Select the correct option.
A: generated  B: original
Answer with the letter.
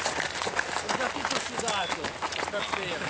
B